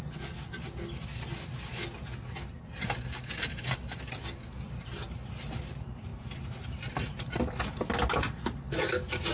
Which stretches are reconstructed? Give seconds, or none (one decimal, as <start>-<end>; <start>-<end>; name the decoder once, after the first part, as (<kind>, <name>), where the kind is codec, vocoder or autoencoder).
none